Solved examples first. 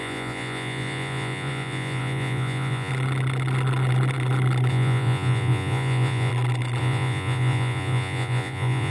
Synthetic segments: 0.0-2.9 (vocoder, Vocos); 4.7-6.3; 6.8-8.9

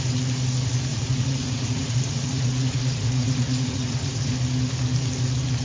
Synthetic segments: 0.9-4.3 (vocoder, Vocos)